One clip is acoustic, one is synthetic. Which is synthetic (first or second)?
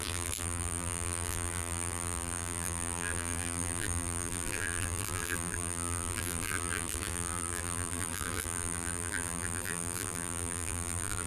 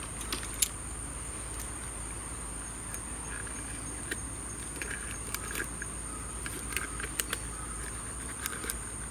first